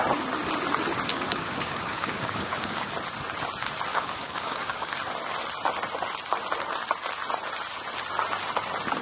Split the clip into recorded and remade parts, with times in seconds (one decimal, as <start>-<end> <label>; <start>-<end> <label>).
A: 0.0-1.1 recorded; 1.1-2.9 remade; 2.9-3.9 recorded; 3.9-4.9 remade; 4.9-9.0 recorded